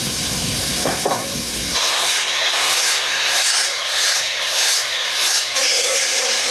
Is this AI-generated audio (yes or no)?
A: yes